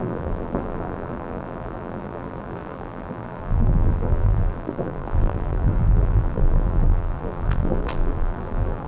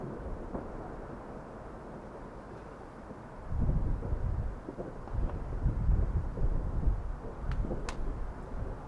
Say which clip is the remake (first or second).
first